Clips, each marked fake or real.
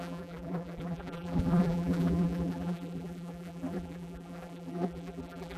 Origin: fake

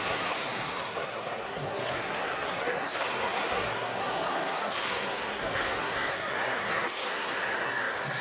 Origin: fake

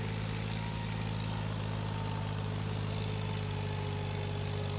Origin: real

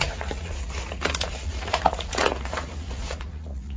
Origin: fake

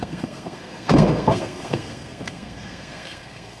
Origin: fake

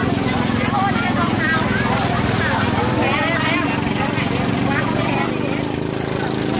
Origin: real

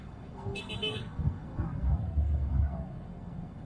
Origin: fake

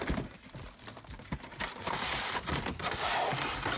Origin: fake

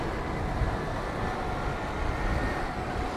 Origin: real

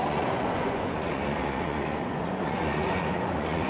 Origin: fake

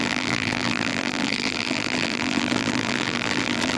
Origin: fake